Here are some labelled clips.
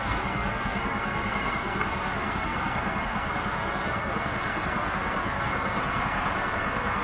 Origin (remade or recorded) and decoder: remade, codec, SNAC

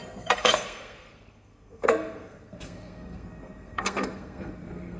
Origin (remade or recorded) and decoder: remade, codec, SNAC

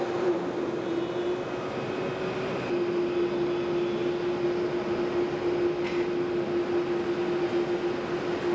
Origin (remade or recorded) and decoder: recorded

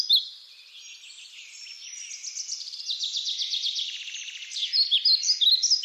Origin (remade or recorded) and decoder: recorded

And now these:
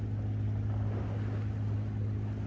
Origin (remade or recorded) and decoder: recorded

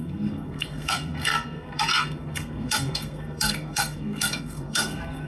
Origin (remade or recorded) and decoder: remade, codec, SNAC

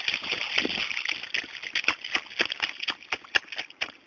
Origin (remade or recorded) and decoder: recorded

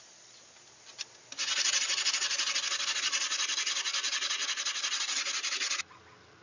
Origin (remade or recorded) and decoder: recorded